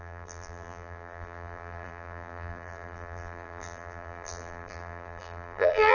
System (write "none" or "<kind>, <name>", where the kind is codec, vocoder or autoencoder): vocoder, BigVGAN v2